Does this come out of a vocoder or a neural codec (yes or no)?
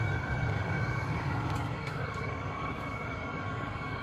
yes